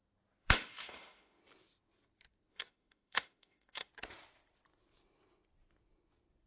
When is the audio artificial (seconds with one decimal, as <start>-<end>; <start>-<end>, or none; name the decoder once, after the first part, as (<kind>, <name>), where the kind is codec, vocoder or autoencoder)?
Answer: 0.4-1.4 (autoencoder, DAC-VAE); 2.5-3.9